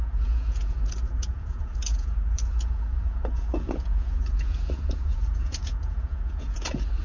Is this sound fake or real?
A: fake